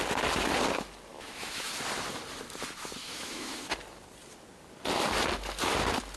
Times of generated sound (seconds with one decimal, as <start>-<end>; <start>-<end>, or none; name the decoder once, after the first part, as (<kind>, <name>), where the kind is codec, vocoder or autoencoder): 1.1-1.7 (autoencoder, DAC-VAE); 3.0-3.6